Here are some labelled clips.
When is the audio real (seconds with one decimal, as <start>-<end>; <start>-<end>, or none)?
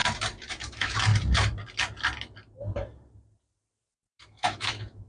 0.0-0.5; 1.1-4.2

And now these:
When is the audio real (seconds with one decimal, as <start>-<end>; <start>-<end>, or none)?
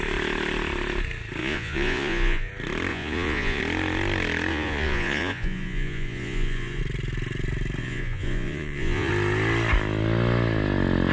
0.0-1.4; 2.5-2.9; 3.6-4.5; 6.8-7.8; 9.1-11.1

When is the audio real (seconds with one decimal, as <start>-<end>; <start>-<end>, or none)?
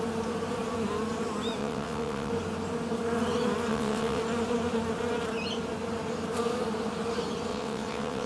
0.0-1.6; 2.3-3.7; 4.2-7.5